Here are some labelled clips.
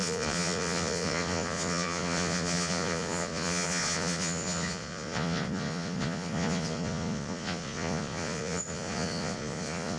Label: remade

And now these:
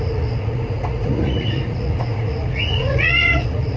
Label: remade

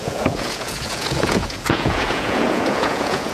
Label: remade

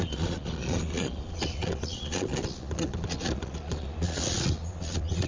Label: remade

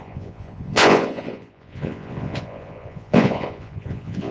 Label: remade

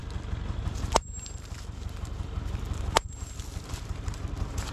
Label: recorded